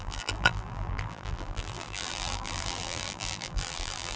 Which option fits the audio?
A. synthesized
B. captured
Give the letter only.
A